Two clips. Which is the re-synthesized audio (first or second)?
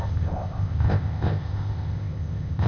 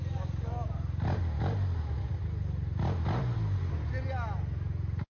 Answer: first